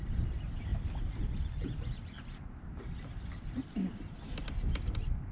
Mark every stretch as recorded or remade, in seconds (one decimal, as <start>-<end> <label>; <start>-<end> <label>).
0.0-5.3 recorded